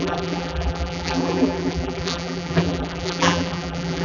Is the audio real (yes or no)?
no